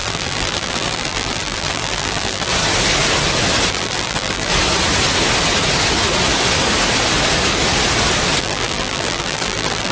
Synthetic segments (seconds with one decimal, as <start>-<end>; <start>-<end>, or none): 0.0-2.5; 3.7-4.5; 8.4-9.9